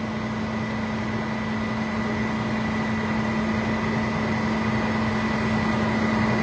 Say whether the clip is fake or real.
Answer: real